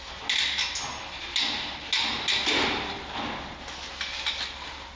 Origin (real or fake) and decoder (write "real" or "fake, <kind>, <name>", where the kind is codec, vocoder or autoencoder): real